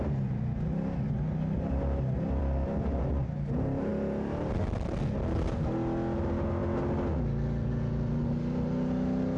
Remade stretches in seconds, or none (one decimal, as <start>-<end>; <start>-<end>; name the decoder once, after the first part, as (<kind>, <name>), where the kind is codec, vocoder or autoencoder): none